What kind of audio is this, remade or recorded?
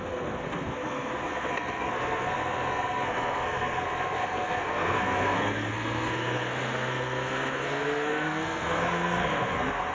remade